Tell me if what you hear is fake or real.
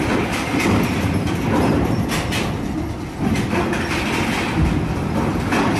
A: real